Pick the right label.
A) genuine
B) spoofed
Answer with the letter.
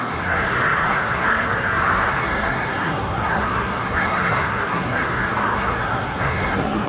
B